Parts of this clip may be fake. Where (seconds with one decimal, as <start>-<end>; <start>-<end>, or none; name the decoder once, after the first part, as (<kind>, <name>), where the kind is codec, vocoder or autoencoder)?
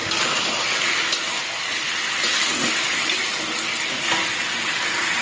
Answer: none